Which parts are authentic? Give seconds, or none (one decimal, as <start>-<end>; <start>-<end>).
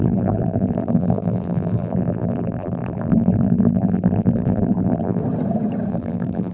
5.2-5.9